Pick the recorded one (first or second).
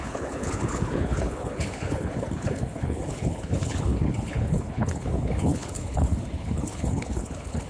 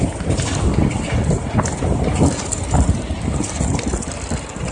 second